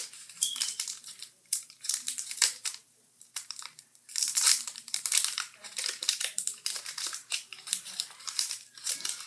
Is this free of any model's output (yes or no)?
no